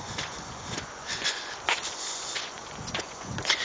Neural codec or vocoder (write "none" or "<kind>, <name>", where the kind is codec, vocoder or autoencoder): vocoder, Vocos